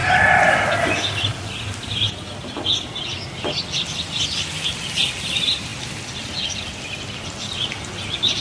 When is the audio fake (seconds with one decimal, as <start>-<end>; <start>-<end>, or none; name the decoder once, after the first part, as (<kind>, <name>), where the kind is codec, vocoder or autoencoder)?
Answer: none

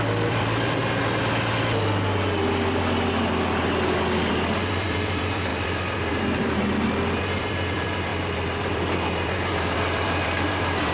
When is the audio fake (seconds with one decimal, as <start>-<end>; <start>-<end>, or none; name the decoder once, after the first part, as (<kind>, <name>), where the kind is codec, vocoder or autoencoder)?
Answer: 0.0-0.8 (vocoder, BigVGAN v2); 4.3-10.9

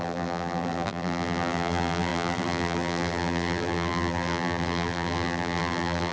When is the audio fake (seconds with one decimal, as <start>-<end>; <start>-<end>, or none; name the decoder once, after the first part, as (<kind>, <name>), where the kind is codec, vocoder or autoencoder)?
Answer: 0.0-6.1 (vocoder, BigVGAN v2)